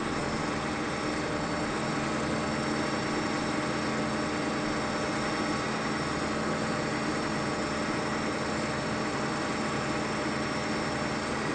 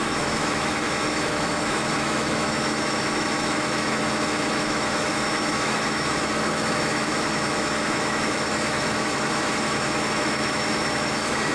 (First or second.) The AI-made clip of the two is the second